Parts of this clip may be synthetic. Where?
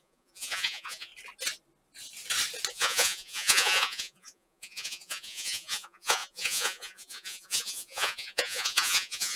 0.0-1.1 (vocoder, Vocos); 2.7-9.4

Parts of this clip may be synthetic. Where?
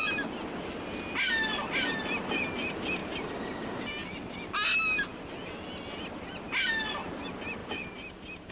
3.0-3.8 (vocoder, BigVGAN v2); 7.6-8.5